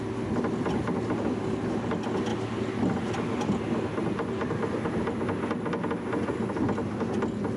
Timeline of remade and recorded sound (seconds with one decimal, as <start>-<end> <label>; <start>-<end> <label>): 0.0-7.6 recorded